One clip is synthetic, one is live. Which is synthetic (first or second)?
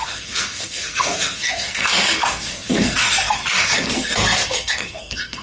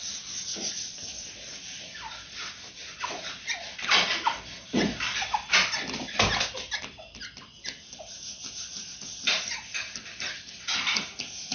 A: first